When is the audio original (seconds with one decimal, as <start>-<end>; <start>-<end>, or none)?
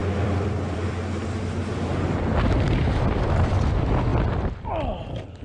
1.9-4.1